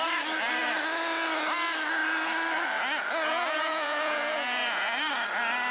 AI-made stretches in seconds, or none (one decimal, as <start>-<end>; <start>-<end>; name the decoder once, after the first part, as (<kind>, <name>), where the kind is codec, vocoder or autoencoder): 3.3-5.1 (vocoder, Vocos)